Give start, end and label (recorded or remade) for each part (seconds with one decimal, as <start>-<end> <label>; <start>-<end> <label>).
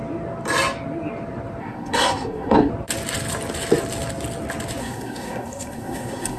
0.0-1.6 recorded; 1.6-2.7 remade; 2.7-4.8 recorded; 4.8-6.4 remade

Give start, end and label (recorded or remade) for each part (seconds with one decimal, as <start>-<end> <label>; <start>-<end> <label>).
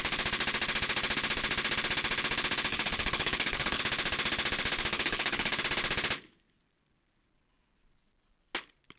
0.0-2.7 recorded; 2.7-3.8 remade; 3.8-4.9 recorded; 4.9-5.6 remade; 5.6-9.0 recorded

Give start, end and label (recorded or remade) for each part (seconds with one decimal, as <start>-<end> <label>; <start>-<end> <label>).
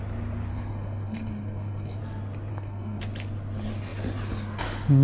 0.0-0.5 recorded; 0.5-2.0 remade; 2.0-2.5 recorded; 2.5-3.0 remade; 3.0-5.0 recorded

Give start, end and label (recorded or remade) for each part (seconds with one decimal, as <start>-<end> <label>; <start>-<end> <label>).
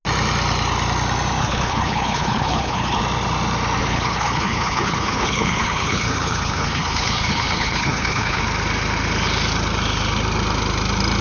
0.0-1.4 recorded; 1.4-3.0 remade; 3.0-3.8 recorded; 3.8-8.4 remade; 8.4-11.2 recorded